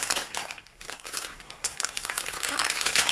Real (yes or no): no